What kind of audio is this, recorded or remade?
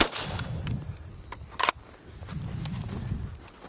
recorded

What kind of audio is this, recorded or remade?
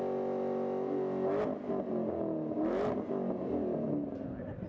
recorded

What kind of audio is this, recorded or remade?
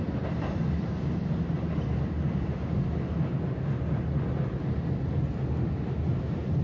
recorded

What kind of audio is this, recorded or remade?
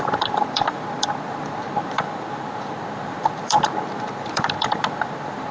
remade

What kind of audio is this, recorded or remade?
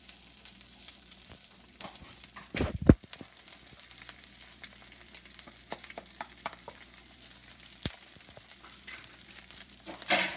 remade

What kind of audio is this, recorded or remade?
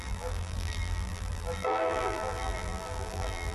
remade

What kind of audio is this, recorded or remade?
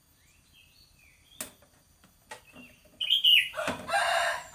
recorded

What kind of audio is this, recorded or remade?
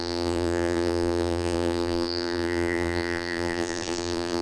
remade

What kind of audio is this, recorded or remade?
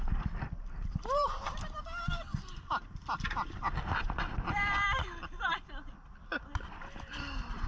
remade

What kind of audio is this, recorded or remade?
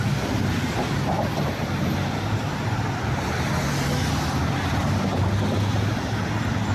recorded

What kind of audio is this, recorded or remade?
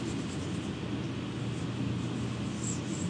recorded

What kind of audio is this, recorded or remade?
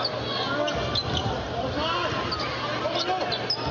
recorded